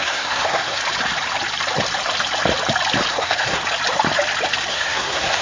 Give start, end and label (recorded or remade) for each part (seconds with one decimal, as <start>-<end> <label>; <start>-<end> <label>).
0.0-0.8 remade; 0.8-3.1 recorded; 3.1-3.6 remade; 3.6-4.7 recorded; 4.7-5.4 remade